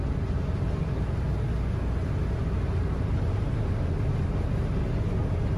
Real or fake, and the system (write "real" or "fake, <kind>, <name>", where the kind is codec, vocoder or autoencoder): real